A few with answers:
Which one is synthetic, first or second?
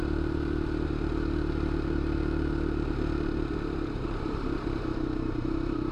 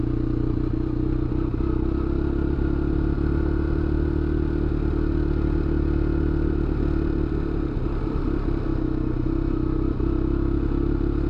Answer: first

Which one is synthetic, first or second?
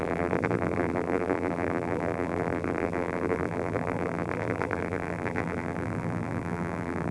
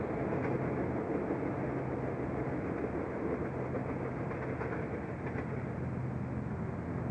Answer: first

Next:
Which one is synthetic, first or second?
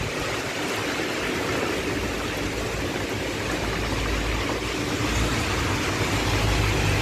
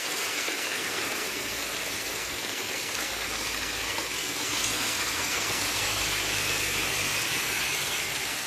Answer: second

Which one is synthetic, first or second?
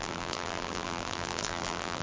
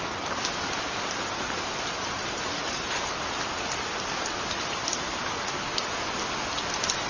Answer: first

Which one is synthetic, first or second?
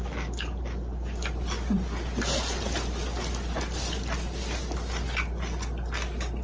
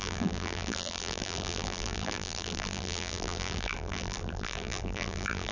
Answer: second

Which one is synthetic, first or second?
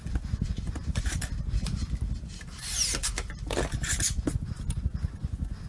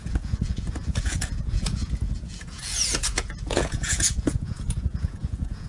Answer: second